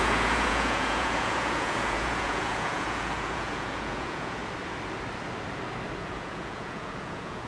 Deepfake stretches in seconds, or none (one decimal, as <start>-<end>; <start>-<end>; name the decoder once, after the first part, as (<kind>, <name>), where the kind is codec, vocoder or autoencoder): 0.0-4.4 (vocoder, Vocos); 6.0-7.5